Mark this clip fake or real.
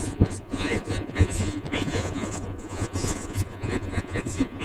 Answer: fake